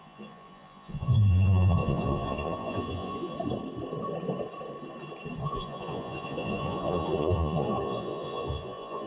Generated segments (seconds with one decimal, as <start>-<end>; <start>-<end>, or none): 0.0-3.3; 5.4-9.1